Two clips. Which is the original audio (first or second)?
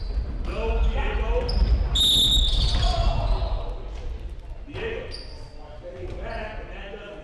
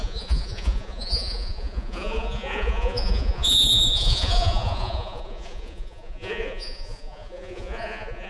first